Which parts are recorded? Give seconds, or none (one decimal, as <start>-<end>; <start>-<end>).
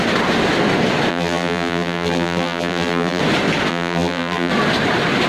0.0-1.1; 3.2-3.7; 4.5-5.3